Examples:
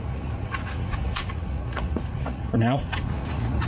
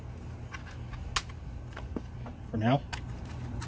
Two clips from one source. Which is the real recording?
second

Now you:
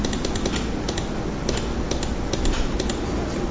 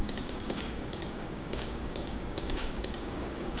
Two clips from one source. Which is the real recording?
first